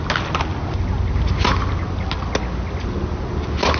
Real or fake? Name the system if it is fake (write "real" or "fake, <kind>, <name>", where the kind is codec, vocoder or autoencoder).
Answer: real